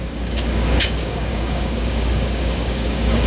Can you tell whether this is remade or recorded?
remade